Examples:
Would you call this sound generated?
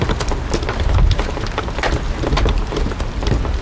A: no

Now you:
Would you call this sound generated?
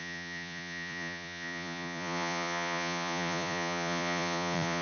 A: yes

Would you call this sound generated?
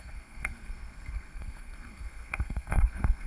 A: yes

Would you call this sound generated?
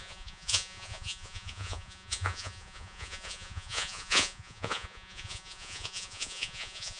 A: yes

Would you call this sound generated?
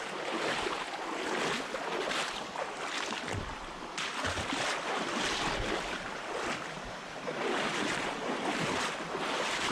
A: no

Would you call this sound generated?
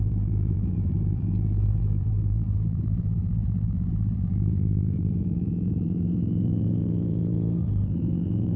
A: yes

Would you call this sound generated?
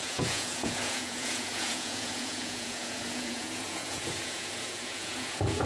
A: yes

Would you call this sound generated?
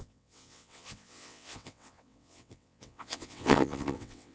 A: yes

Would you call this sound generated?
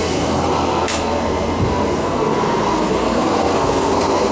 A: yes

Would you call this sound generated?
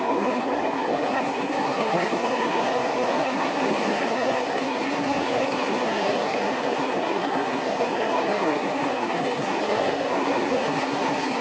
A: yes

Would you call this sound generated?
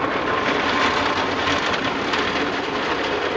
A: no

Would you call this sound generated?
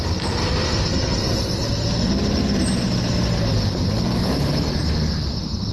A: no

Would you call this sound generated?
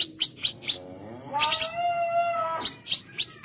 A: no